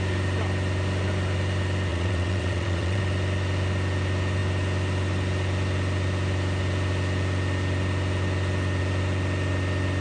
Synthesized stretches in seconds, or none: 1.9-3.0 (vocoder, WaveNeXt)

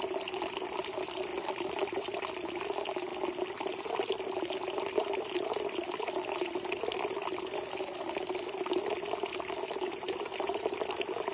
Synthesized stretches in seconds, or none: none

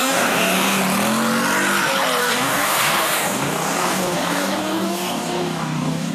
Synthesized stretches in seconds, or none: 0.0-0.8 (codec, DAC); 2.2-6.1

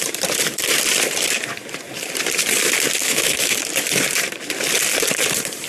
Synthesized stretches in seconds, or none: 3.0-3.7 (autoencoder, DAC-VAE)

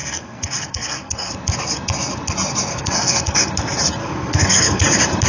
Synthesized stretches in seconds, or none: 0.0-1.3 (codec, SNAC); 2.7-3.5; 4.0-4.8

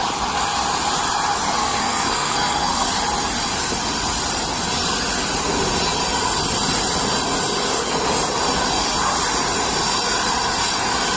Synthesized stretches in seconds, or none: 1.6-2.9 (codec, SNAC)